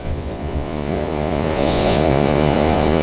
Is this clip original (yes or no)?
no